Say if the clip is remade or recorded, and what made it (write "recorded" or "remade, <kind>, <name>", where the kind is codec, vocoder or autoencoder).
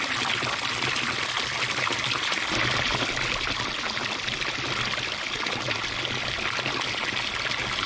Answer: recorded